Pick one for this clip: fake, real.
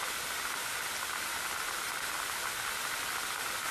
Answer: fake